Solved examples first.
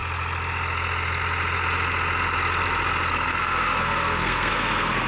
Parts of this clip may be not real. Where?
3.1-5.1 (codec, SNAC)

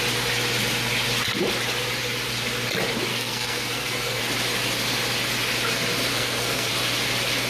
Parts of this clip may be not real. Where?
3.1-4.2 (codec, SNAC); 6.1-6.7

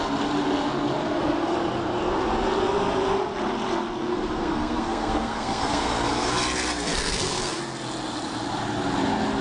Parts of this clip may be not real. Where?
1.0-1.5 (codec, SNAC); 4.1-6.3; 6.9-7.6

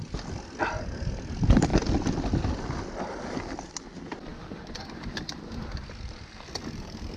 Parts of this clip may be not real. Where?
none

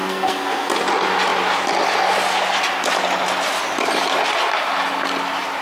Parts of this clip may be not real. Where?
0.0-0.7 (codec, SNAC)

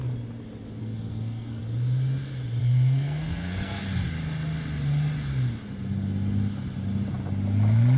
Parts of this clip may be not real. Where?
0.8-1.6 (codec, SNAC); 2.6-3.8

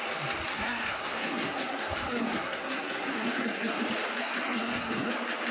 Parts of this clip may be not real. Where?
0.5-3.8 (codec, SNAC); 4.2-5.1

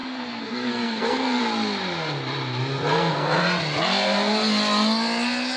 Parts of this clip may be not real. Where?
0.0-1.4 (codec, SNAC); 2.9-3.4